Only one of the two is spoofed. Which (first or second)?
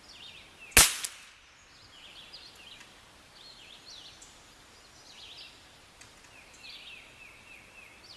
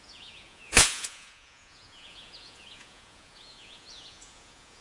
second